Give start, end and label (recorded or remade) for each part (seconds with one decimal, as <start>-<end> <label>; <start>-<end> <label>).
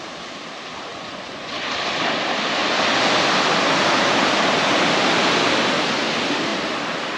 0.0-0.9 recorded; 0.9-1.7 remade; 1.7-7.2 recorded